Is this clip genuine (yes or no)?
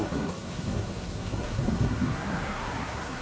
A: no